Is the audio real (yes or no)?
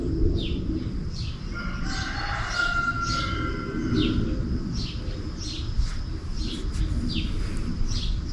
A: yes